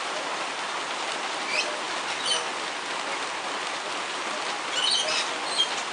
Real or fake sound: real